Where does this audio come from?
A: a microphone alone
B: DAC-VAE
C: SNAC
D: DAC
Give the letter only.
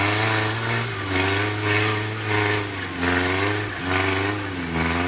A